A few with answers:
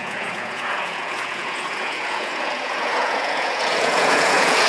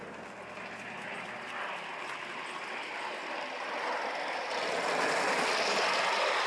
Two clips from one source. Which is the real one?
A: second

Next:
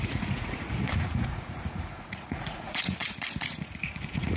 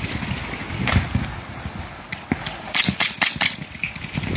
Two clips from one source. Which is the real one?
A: second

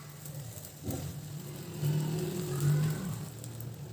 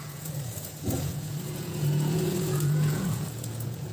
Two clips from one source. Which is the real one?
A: first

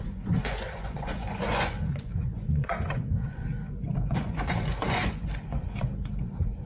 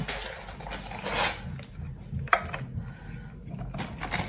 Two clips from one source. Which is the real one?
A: second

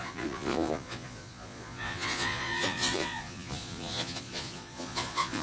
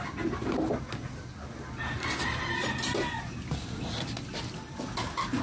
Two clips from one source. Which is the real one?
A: second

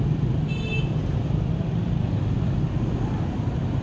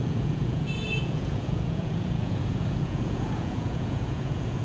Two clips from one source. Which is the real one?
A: first